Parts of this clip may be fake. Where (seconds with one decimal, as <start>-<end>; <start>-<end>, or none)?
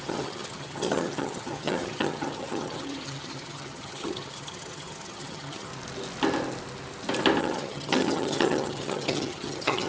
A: 0.0-5.7; 7.4-9.9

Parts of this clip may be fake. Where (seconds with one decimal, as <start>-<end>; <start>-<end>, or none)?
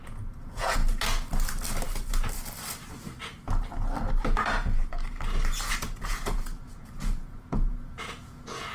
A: 0.0-0.8; 5.7-8.7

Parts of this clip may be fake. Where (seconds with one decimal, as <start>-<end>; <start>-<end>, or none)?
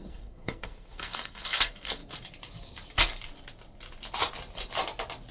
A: 0.0-2.0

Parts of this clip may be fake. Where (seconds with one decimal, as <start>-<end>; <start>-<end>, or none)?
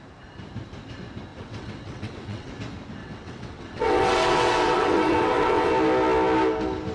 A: 1.3-2.5; 3.0-5.7